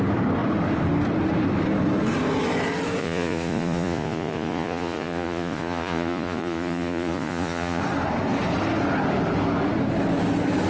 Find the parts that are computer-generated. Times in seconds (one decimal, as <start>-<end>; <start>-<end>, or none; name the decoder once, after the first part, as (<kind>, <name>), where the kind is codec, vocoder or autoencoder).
3.0-7.8 (vocoder, Vocos)